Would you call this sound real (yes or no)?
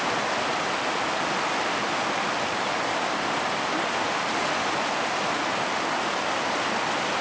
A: yes